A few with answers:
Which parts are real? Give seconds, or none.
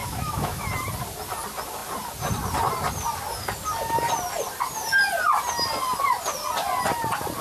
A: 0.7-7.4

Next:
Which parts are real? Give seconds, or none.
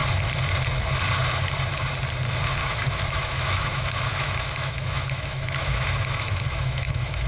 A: 0.0-2.6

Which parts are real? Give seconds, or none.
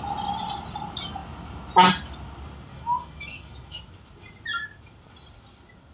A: 0.0-2.7; 3.8-5.9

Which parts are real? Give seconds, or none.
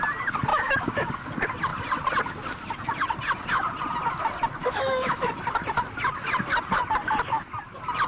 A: 0.0-0.5; 1.1-4.6; 5.3-8.1